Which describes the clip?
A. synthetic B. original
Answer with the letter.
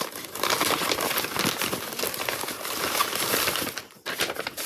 B